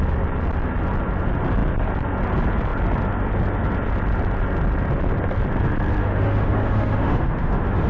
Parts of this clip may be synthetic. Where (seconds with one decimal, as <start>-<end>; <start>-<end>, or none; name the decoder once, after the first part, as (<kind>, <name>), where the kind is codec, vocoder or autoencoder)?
6.0-7.9 (autoencoder, DAC-VAE)